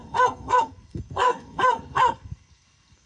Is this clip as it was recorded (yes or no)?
no